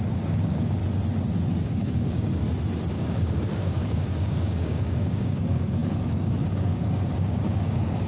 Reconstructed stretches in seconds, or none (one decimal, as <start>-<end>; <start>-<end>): 0.0-0.8; 1.6-2.4; 2.9-8.1